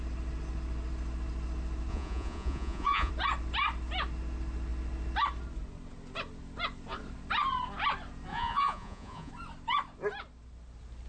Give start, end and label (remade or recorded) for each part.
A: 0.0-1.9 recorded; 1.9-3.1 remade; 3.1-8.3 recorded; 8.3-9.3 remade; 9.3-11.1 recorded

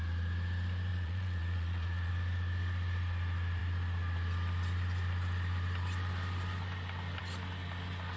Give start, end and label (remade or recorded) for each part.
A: 0.0-0.9 recorded; 0.9-2.1 remade; 2.1-8.2 recorded

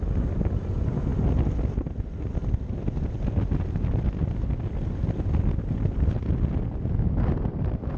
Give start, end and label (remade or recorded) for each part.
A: 0.0-8.0 recorded

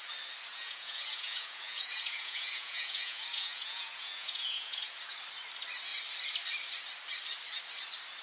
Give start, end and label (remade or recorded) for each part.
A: 0.0-0.5 recorded; 0.5-4.9 remade; 4.9-8.2 recorded

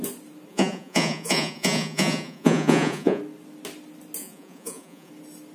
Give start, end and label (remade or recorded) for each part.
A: 0.0-0.5 recorded; 0.5-3.2 remade; 3.2-4.2 recorded; 4.2-5.1 remade; 5.1-5.5 recorded

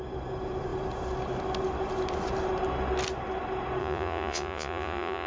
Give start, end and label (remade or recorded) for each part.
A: 0.0-3.8 recorded; 3.8-5.3 remade

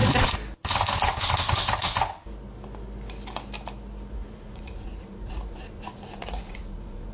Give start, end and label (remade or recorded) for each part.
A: 0.0-4.3 recorded; 4.3-7.1 remade